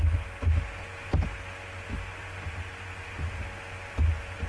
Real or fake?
real